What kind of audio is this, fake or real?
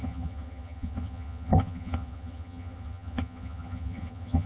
fake